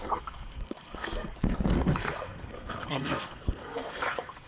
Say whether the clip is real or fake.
fake